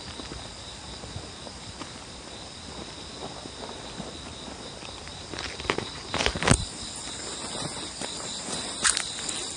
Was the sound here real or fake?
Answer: fake